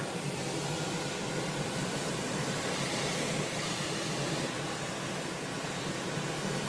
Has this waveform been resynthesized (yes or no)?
no